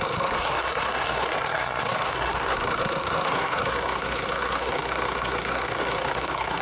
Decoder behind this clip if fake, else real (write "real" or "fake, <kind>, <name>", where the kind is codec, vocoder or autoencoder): fake, codec, SNAC